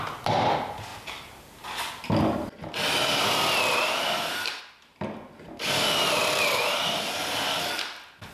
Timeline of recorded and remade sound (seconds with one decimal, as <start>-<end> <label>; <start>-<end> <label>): 0.0-8.3 recorded